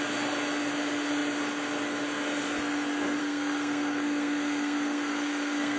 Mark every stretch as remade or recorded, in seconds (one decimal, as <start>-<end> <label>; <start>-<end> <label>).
0.0-3.2 recorded; 3.2-5.8 remade